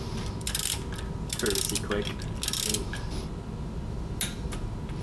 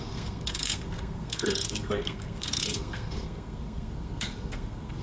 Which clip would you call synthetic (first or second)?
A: second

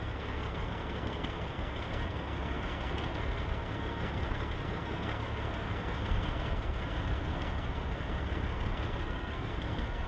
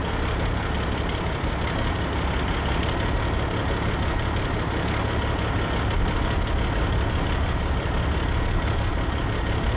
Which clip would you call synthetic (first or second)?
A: first